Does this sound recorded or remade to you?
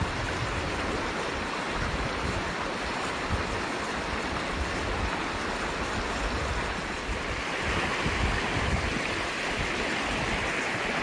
recorded